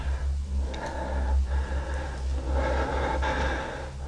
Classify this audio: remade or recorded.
recorded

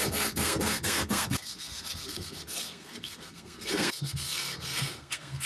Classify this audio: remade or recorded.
remade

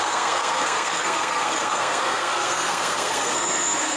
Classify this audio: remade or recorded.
remade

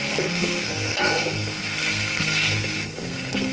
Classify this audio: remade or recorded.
remade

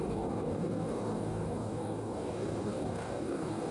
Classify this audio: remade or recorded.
remade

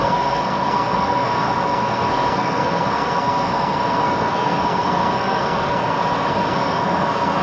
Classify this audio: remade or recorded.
remade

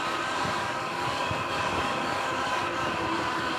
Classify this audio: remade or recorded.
remade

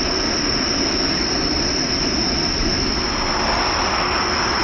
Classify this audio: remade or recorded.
recorded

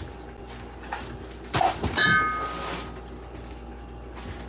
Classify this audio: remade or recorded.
recorded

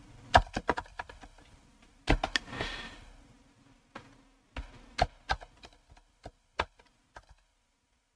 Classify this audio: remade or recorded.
recorded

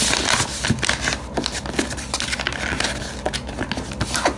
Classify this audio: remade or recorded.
recorded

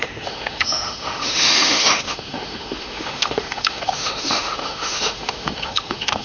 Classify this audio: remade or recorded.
remade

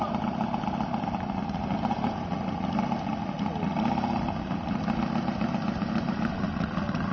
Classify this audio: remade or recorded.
recorded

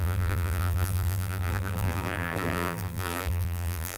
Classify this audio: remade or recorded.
remade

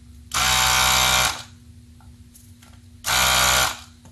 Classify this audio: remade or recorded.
recorded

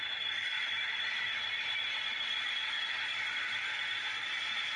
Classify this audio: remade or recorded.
recorded